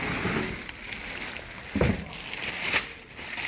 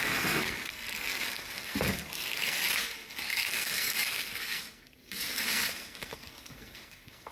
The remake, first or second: second